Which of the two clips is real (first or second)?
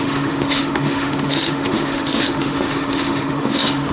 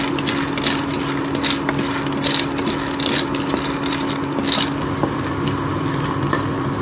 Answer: second